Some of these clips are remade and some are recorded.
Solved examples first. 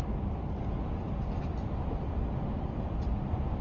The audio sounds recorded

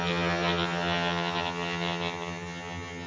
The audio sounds remade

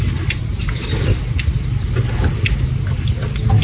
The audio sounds recorded